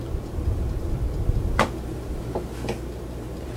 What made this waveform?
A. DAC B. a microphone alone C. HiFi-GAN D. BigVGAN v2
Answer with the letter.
D